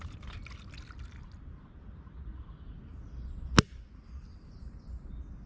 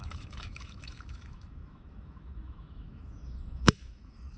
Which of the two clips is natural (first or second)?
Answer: first